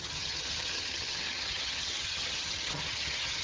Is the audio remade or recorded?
remade